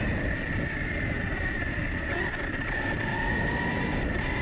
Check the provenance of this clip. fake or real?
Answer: fake